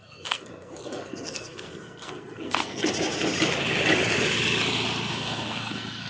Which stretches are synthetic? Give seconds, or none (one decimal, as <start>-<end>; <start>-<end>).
0.0-2.9; 5.1-6.1